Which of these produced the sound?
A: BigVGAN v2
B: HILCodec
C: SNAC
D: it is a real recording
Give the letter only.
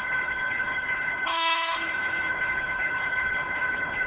B